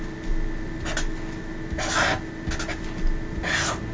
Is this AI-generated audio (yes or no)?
no